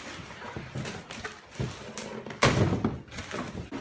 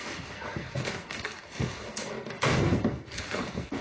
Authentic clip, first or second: first